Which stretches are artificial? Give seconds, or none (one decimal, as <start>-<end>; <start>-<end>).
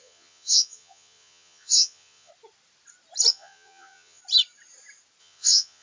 0.0-2.3; 3.3-4.2; 5.2-5.8